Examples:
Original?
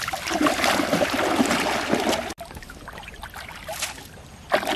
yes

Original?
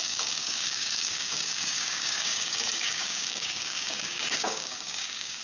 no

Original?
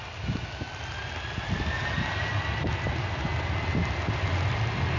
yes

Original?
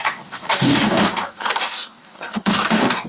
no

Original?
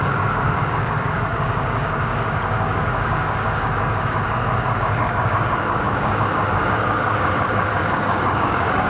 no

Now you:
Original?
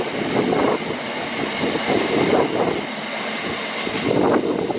yes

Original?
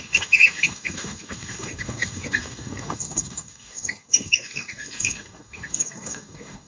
no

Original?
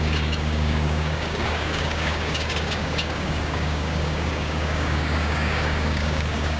no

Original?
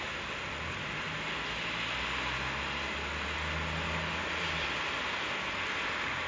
yes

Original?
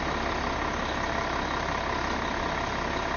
yes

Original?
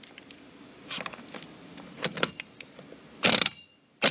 yes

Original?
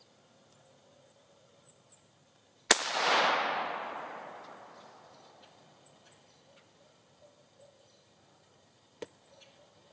yes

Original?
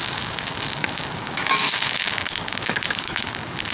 no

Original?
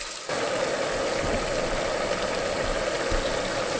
yes